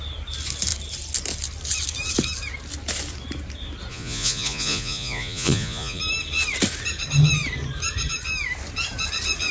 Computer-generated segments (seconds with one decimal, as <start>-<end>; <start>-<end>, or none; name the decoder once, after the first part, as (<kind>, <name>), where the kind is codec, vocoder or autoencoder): 3.9-6.0 (vocoder, Vocos)